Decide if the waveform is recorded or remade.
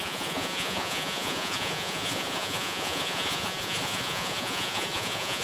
remade